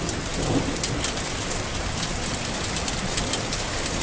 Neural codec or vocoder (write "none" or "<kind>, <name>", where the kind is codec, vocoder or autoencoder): vocoder, BigVGAN v2